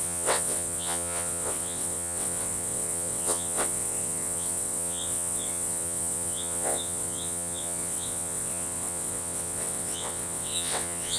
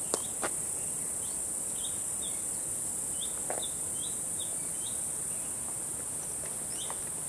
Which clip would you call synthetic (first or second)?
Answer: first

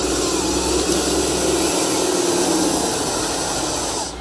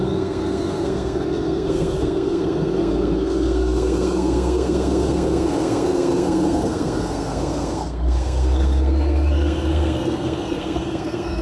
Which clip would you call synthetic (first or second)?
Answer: second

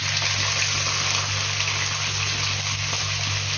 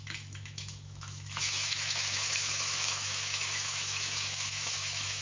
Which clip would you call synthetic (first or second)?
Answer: second